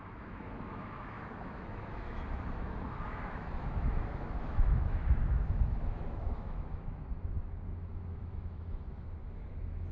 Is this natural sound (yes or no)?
no